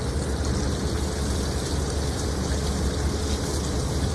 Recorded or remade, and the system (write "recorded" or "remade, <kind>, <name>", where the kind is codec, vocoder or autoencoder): recorded